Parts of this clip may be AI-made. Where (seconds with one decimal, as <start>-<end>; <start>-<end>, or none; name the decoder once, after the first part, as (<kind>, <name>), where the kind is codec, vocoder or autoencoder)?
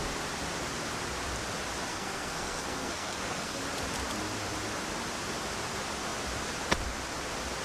1.9-3.6 (codec, SNAC)